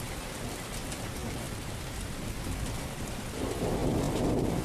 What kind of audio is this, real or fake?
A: real